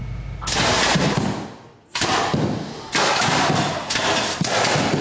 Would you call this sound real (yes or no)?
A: yes